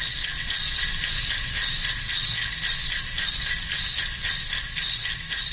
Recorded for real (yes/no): yes